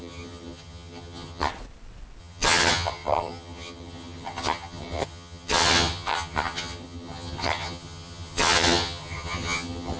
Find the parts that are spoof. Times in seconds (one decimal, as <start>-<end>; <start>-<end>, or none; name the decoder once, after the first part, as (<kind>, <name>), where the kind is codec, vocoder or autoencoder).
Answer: 0.0-1.5 (vocoder, HiFi-GAN); 2.2-10.0